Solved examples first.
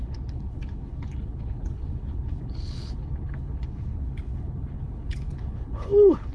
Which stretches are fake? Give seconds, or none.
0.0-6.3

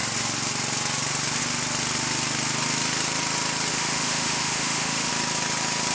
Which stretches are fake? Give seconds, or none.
3.7-5.1

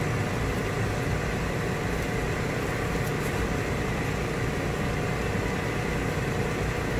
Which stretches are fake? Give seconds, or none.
none

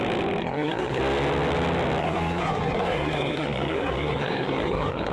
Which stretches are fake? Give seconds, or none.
0.4-1.0; 2.0-5.1

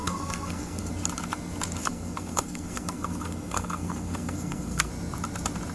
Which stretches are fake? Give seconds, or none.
0.0-0.9; 1.8-4.9

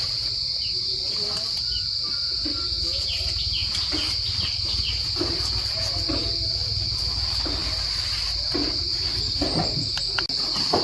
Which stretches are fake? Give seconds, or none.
none